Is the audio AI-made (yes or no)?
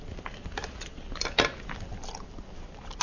no